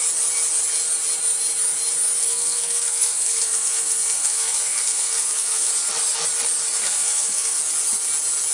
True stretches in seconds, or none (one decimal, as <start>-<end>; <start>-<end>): 0.0-2.2; 5.7-6.8; 7.6-8.5